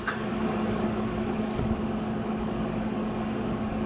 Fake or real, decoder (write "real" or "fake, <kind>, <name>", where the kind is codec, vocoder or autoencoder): fake, codec, DAC